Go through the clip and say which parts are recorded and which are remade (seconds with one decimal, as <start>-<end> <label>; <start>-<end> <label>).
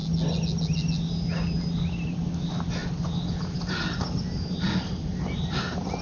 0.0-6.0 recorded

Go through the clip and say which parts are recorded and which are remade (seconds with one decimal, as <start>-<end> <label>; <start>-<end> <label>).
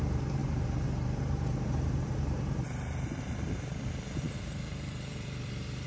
0.0-5.9 remade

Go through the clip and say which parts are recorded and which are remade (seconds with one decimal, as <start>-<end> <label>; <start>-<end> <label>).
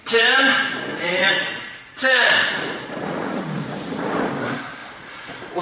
0.0-0.9 recorded; 0.9-4.3 remade; 4.3-4.8 recorded; 4.8-5.6 remade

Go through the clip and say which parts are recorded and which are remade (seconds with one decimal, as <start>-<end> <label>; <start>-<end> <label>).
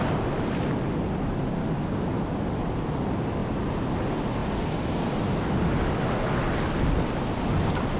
0.0-8.0 recorded